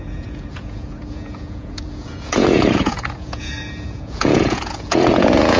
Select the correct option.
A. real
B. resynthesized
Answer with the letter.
B